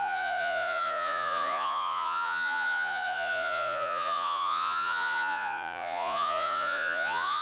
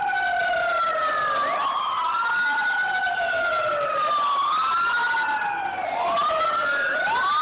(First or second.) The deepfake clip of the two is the first